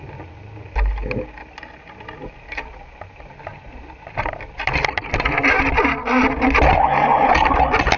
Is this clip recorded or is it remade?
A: recorded